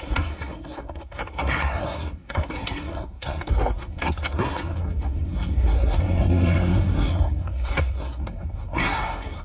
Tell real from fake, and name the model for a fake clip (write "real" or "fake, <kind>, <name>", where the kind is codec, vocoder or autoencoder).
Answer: fake, codec, SNAC